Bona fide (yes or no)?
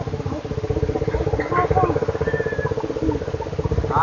yes